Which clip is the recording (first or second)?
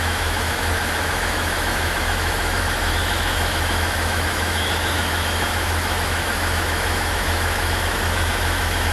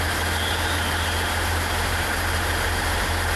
second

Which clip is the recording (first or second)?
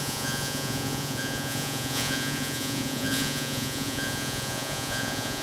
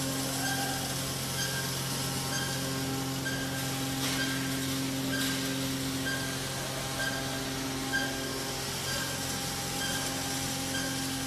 second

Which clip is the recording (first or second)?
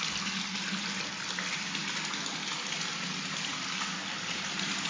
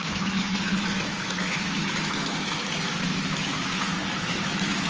first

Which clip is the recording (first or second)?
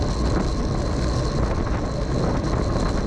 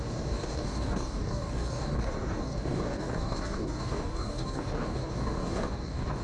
first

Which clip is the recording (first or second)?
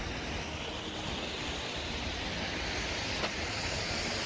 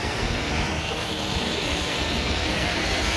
first